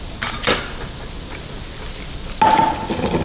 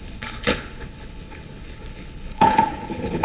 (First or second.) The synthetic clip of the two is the second